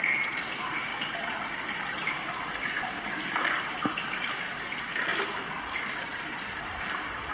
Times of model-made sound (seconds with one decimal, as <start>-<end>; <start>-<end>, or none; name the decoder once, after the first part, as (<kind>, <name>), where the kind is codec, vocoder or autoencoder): none